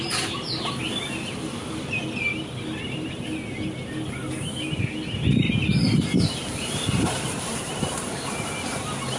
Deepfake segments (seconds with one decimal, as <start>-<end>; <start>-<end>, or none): 6.4-7.8